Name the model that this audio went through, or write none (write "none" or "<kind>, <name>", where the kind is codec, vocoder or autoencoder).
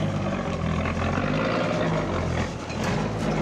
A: none